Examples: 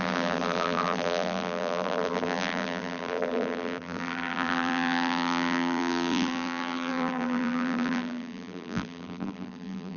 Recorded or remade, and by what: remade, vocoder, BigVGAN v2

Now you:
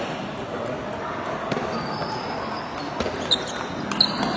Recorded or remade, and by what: recorded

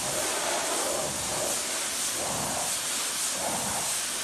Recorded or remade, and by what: recorded